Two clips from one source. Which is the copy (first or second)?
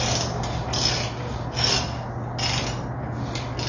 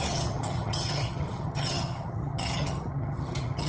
second